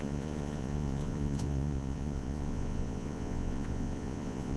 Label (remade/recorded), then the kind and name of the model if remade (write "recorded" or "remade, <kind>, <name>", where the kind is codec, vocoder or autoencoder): remade, vocoder, Vocos